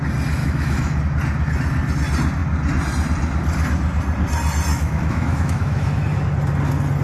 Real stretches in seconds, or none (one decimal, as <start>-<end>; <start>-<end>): 0.0-0.4; 1.0-4.7; 6.0-7.0